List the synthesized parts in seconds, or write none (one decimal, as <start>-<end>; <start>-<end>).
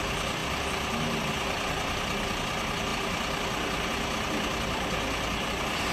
0.4-1.2